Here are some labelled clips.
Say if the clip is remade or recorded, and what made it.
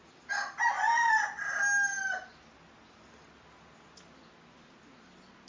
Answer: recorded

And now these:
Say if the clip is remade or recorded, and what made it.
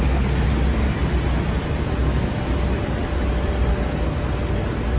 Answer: recorded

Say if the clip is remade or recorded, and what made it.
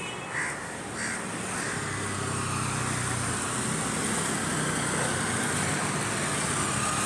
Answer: recorded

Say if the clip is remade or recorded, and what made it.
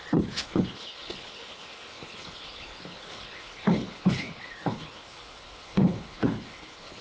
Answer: remade, codec, HILCodec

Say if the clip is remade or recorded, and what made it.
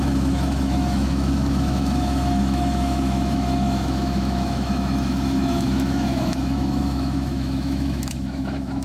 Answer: remade, autoencoder, DAC-VAE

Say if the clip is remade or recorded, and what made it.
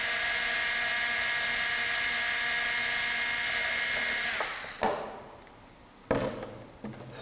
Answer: recorded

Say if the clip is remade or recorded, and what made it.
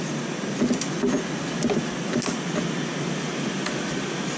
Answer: recorded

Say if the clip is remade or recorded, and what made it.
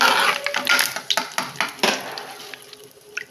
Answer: recorded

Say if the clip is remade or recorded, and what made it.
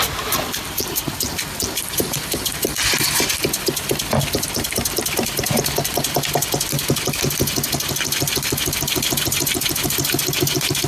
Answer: recorded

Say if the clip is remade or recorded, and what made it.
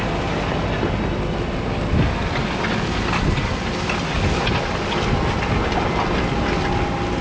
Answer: recorded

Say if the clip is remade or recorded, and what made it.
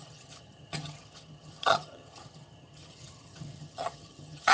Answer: remade, vocoder, HiFi-GAN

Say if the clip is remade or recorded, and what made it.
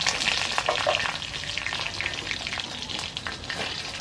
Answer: recorded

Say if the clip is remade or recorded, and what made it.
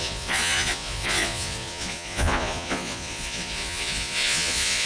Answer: remade, vocoder, Vocos